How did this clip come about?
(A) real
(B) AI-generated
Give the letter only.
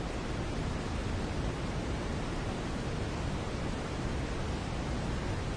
A